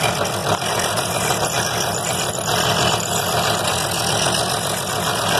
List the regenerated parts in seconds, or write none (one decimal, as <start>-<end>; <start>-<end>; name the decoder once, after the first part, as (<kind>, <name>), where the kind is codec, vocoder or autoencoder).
none